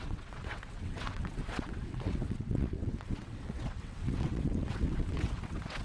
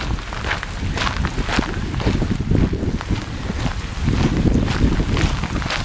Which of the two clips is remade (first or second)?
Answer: first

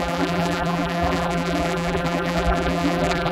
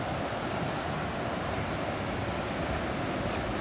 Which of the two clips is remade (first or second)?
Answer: first